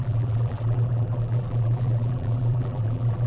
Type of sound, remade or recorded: remade